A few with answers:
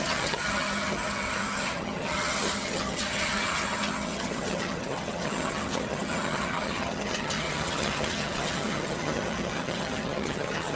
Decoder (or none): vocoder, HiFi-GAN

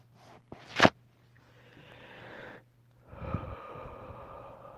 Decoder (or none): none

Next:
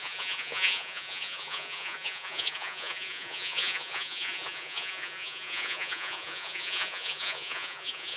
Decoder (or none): vocoder, Vocos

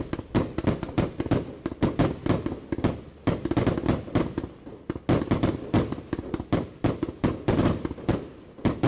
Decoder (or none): none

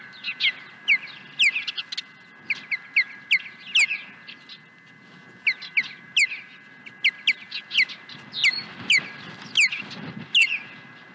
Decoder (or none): none